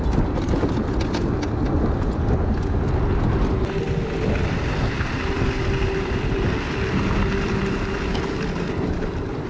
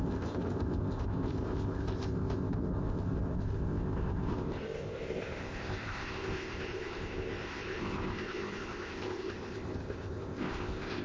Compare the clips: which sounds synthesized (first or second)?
second